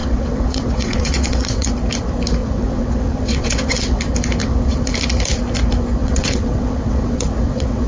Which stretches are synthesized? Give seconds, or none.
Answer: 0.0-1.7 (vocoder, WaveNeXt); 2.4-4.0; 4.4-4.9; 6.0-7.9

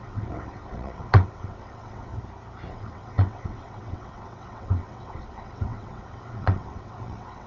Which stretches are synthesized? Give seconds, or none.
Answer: 0.0-2.1 (vocoder, WaveNeXt); 2.7-7.5

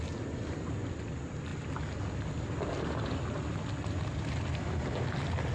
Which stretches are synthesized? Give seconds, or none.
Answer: none

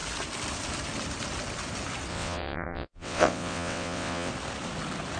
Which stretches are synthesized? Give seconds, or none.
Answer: 2.1-4.3 (vocoder, WaveNeXt)

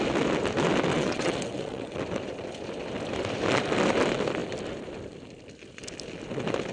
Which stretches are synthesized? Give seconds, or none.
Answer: 0.9-2.0 (vocoder, WaveNeXt)